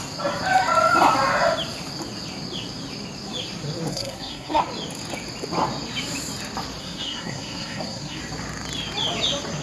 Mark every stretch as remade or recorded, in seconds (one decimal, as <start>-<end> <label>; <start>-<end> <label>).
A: 0.0-3.9 recorded; 3.9-4.6 remade; 4.6-6.8 recorded; 6.8-8.2 remade; 8.2-9.6 recorded